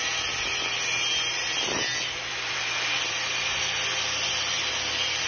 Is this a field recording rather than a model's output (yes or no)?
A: no